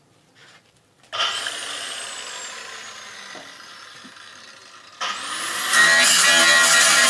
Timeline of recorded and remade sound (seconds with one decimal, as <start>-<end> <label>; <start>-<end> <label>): 0.0-0.4 recorded; 0.4-2.0 remade; 2.0-7.1 recorded